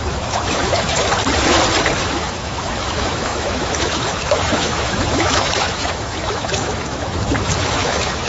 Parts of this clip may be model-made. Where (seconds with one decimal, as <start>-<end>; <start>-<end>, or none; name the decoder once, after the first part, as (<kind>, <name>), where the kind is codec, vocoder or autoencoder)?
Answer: 0.0-1.1 (autoencoder, DAC-VAE); 2.0-8.3